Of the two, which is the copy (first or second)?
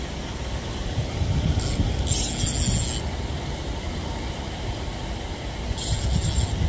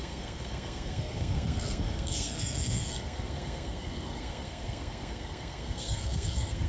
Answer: second